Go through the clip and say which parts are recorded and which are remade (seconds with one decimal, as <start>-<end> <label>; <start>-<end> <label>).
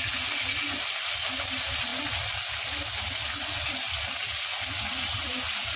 0.0-5.8 recorded